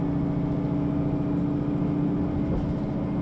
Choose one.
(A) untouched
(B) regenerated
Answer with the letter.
A